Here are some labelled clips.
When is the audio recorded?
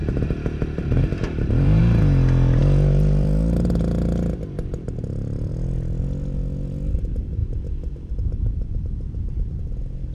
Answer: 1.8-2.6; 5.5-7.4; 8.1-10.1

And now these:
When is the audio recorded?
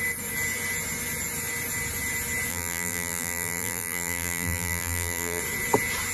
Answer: 0.0-2.5; 5.4-6.1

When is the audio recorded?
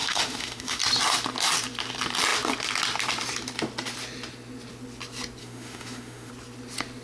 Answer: 0.8-5.4; 6.3-7.0